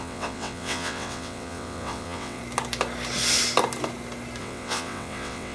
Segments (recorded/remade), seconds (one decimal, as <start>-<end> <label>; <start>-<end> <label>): 0.0-2.4 remade; 2.4-4.4 recorded; 4.4-5.5 remade